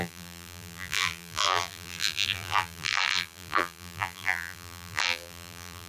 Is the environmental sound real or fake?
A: fake